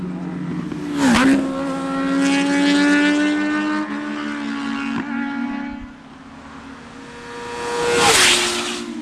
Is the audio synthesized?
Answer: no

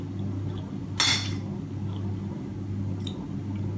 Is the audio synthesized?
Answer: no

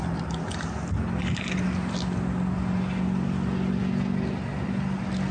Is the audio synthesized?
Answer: no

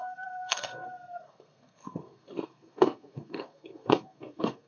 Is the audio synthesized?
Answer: yes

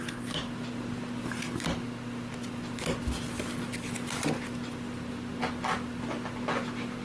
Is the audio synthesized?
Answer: no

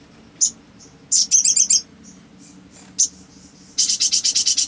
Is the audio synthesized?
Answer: no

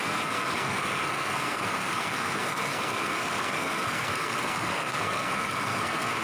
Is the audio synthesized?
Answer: yes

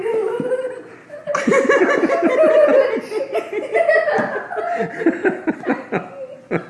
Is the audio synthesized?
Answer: no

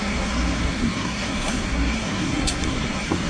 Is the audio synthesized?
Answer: yes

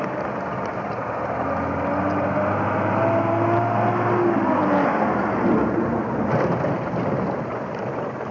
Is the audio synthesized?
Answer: no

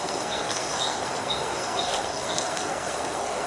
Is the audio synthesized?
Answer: yes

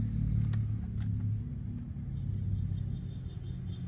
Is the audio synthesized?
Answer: no